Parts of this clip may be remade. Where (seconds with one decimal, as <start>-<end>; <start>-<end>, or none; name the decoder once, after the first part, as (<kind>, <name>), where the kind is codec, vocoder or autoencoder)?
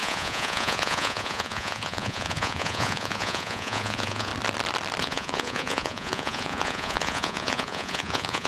0.0-4.3 (vocoder, Vocos); 5.0-8.5